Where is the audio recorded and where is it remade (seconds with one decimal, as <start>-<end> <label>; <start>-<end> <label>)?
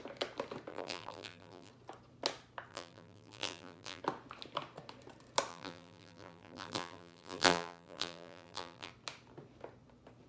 0.0-0.7 recorded; 0.7-1.7 remade; 1.7-2.7 recorded; 2.7-4.0 remade; 4.0-5.5 recorded; 5.5-8.9 remade; 8.9-10.3 recorded